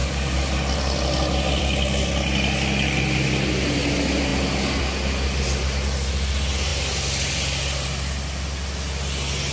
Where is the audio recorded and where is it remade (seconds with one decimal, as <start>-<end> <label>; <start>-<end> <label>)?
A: 0.0-9.5 recorded